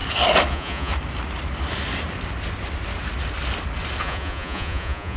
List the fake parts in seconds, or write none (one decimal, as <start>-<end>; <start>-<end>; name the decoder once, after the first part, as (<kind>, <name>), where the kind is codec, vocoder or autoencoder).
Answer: 0.5-0.9 (vocoder, Vocos); 4.0-5.2